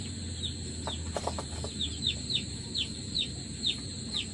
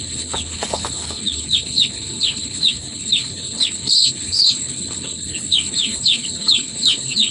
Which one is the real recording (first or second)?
first